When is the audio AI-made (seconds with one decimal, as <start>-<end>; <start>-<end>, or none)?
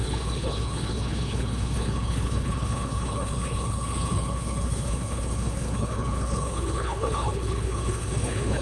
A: 0.0-8.6